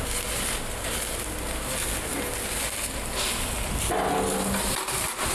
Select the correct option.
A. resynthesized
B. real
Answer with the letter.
B